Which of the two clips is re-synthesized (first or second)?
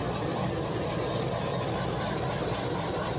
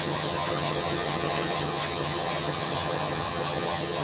second